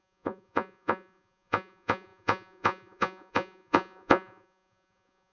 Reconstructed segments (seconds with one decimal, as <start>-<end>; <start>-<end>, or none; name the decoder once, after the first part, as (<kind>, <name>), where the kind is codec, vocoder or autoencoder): 0.0-5.3 (vocoder, Vocos)